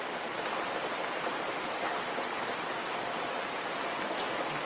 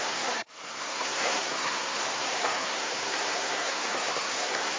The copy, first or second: second